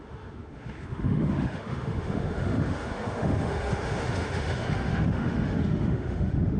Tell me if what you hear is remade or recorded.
remade